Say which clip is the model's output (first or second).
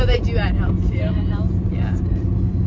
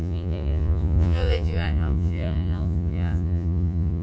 second